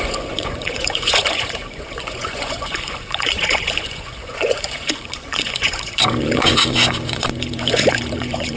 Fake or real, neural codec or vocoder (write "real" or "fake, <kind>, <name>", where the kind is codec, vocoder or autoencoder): fake, vocoder, Vocos